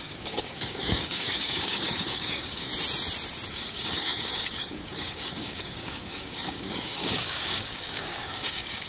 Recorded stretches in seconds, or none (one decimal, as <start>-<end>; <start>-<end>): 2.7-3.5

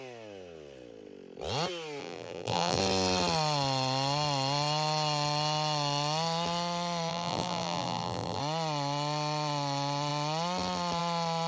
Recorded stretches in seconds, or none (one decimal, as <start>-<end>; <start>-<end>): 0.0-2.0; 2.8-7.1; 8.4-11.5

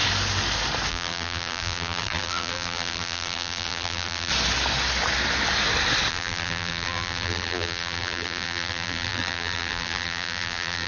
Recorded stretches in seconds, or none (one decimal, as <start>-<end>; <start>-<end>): 0.0-0.9; 4.3-6.1